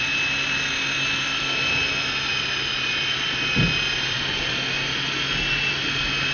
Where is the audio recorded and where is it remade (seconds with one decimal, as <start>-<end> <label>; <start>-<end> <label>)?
0.0-6.3 recorded